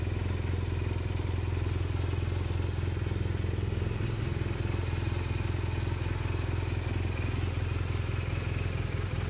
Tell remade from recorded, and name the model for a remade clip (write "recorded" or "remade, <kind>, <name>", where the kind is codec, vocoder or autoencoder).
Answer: recorded